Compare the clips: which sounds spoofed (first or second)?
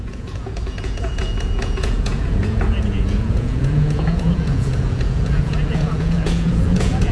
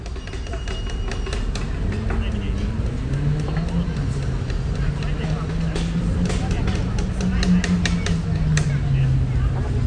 first